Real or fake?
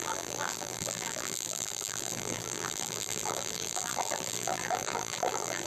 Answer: fake